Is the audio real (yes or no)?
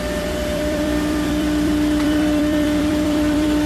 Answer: no